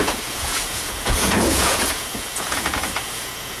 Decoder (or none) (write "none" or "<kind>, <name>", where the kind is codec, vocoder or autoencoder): vocoder, Vocos